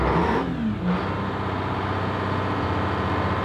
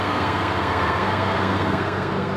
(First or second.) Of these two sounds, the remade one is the second